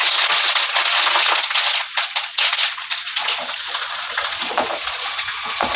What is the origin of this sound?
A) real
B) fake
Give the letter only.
B